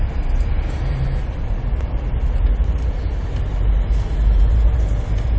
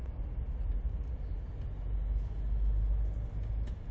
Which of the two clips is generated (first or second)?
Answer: first